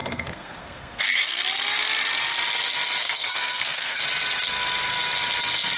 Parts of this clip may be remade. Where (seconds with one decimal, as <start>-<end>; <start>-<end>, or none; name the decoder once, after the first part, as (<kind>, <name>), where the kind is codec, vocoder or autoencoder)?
0.0-1.0 (codec, SNAC); 3.0-4.0